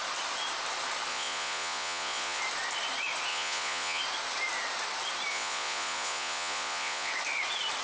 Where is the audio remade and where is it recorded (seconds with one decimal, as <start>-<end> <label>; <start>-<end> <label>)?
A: 0.0-1.1 recorded; 1.1-2.4 remade; 2.4-3.3 recorded; 3.3-4.0 remade; 4.0-5.3 recorded; 5.3-7.1 remade; 7.1-7.8 recorded